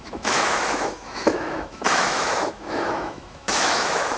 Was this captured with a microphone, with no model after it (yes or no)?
no